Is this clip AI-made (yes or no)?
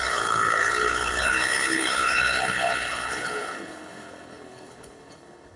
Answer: yes